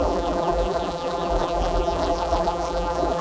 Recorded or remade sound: remade